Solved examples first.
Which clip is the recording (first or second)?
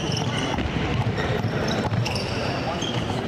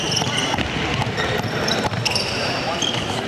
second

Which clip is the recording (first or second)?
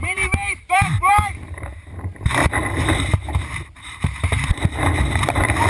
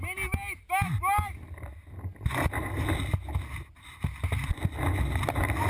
second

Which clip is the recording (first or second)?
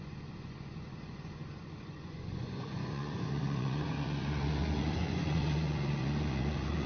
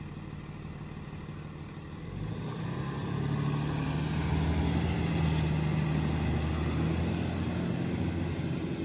second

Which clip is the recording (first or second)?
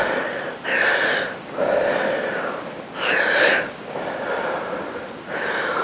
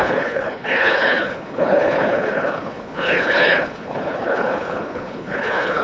first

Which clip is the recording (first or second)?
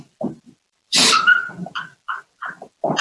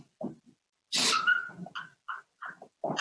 second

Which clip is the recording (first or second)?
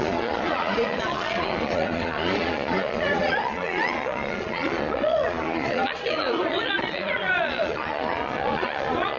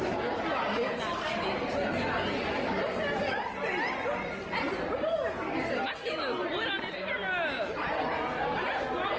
second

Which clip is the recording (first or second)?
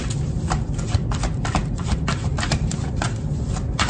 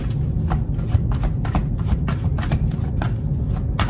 second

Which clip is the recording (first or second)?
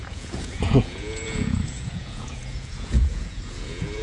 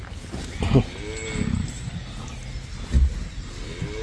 second